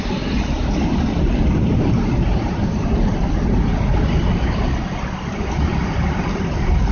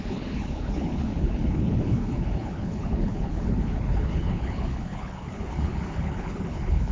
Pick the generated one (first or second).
second